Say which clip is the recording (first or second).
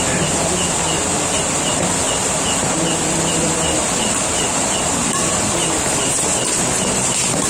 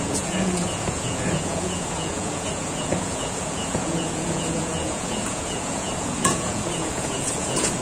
first